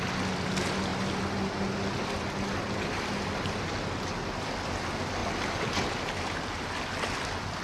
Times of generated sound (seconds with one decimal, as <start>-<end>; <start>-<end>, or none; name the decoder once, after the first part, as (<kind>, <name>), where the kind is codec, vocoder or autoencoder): none